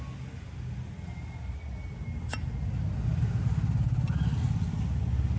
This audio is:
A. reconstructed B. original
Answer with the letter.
B